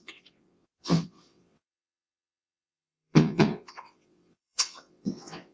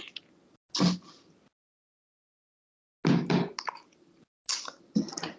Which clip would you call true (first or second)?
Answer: second